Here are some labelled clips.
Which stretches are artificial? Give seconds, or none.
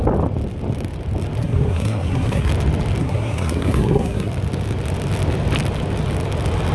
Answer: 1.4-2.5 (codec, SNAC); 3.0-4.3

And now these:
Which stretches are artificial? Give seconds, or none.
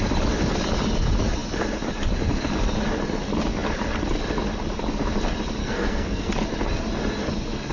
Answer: 5.6-6.3 (codec, SNAC)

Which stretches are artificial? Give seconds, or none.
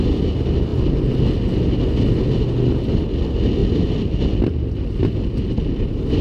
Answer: none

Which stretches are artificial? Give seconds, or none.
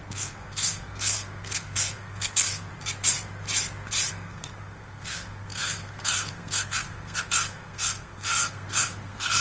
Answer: 0.0-2.7 (codec, SNAC); 4.1-9.4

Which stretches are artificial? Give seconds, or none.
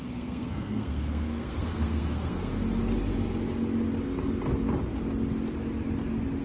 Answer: 0.0-2.6 (codec, SNAC)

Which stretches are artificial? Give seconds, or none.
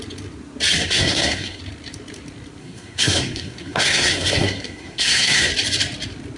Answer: 0.8-1.6 (codec, SNAC); 2.6-5.5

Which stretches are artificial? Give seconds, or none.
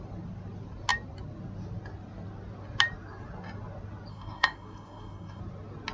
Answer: 4.1-5.4 (codec, SNAC)